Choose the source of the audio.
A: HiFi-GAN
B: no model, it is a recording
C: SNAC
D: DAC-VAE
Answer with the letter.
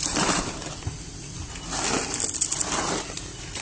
B